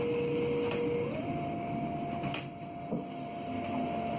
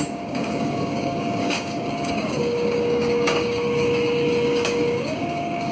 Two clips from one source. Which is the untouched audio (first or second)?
first